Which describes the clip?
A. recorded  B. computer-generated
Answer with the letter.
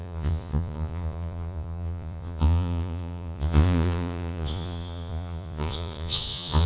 B